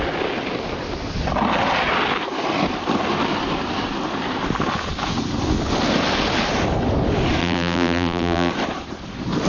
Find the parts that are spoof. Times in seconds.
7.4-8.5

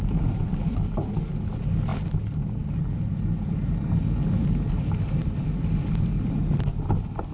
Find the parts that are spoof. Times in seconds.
none

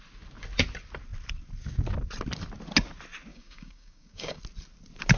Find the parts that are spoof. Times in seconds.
3.3-4.4

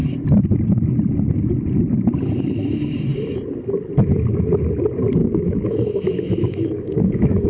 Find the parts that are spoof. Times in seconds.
5.2-7.5

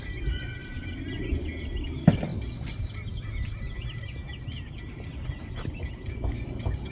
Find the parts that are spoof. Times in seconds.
0.6-1.2

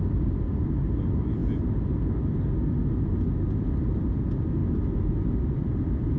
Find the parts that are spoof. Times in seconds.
0.0-1.4; 3.8-4.6; 5.1-6.2